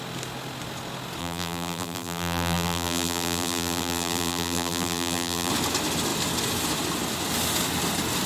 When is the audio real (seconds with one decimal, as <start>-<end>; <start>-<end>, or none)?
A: 0.0-1.2; 5.5-8.3